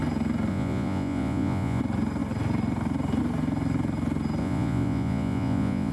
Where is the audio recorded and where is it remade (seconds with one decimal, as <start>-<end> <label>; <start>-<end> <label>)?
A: 0.0-0.5 recorded; 0.5-1.8 remade; 1.8-4.4 recorded; 4.4-5.9 remade